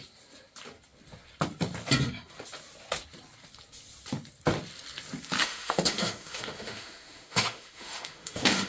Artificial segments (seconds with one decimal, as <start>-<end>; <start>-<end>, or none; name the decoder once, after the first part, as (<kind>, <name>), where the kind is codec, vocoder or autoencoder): 5.4-8.7 (autoencoder, DAC-VAE)